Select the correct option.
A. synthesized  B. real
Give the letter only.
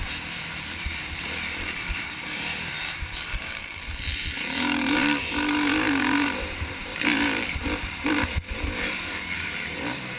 A